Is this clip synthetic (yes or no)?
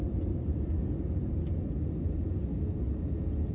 no